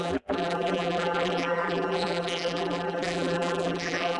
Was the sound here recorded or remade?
remade